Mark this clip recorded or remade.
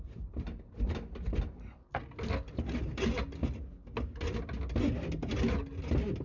recorded